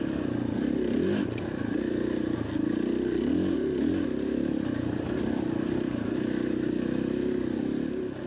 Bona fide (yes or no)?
yes